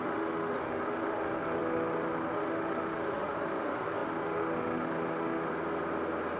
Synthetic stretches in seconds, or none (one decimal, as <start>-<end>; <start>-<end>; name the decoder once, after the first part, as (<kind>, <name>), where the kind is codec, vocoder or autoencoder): 0.0-5.5 (autoencoder, DAC-VAE)

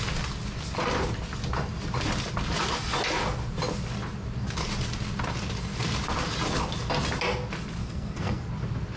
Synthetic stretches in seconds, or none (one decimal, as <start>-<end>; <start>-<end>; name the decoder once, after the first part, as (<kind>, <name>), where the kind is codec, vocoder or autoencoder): 7.8-8.5 (codec, SNAC)

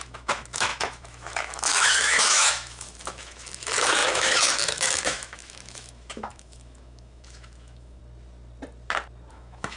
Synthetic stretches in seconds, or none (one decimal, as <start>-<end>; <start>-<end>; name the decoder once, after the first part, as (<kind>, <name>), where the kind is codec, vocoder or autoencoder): 0.0-8.0 (autoencoder, DAC-VAE); 9.3-9.8

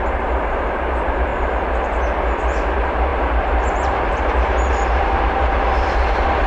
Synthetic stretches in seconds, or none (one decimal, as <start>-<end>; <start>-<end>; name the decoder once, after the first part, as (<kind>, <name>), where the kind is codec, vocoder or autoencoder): 0.0-1.3 (vocoder, BigVGAN v2); 2.4-6.5

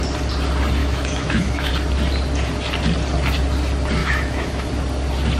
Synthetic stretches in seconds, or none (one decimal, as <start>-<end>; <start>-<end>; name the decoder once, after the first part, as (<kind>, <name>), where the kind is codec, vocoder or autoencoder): 0.8-1.7 (autoencoder, DAC-VAE); 4.0-4.7

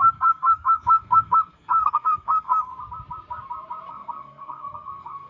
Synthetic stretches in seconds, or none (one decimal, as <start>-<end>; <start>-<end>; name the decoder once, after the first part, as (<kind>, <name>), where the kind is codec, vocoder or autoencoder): 0.0-2.7 (codec, SNAC); 3.9-5.3

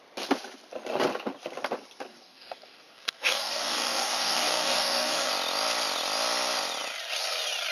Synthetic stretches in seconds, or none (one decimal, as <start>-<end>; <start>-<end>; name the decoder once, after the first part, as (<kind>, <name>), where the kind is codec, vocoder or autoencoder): 2.1-5.3 (codec, DAC)

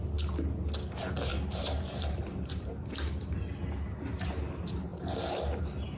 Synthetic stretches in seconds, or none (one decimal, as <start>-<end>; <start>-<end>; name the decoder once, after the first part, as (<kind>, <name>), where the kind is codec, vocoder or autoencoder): 1.3-2.7 (vocoder, BigVGAN v2); 4.9-5.6